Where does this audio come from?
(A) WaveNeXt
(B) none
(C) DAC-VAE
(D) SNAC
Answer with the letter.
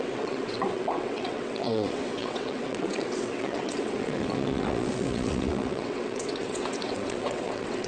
A